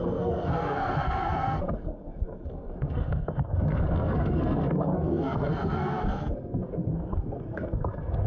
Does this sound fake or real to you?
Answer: fake